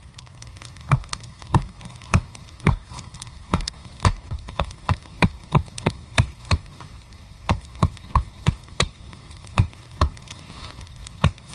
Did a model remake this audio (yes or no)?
yes